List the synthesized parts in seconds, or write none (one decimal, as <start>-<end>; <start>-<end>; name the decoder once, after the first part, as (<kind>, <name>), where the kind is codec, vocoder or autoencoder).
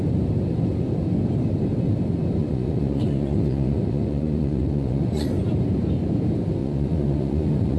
2.4-5.4 (vocoder, Vocos); 6.6-7.8